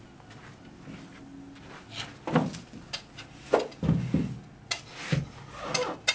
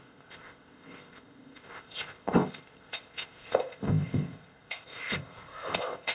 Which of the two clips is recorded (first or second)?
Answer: first